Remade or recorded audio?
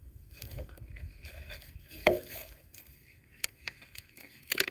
remade